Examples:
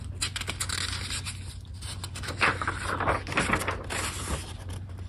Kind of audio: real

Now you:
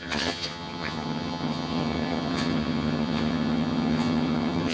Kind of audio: fake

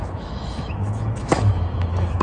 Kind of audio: fake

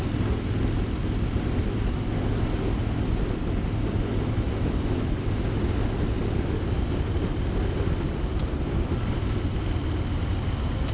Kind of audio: real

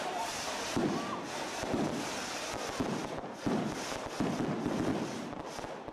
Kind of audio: real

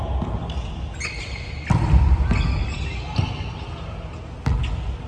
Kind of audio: real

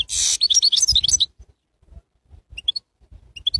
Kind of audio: real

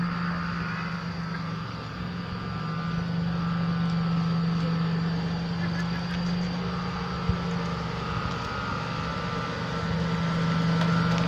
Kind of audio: real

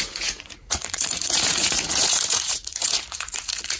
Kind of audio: fake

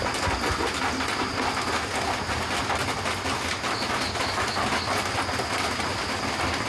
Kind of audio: real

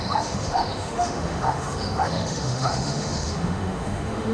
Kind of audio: fake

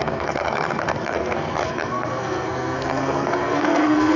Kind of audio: fake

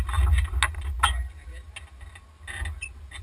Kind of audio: real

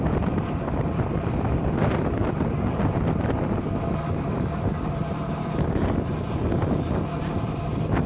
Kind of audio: real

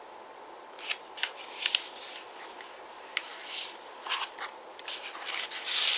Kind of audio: real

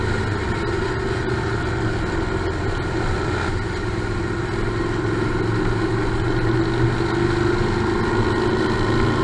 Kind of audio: real